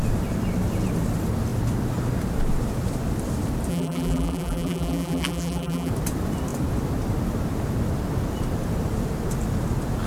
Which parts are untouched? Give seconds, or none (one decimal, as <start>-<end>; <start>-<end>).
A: 0.0-3.7; 5.9-10.1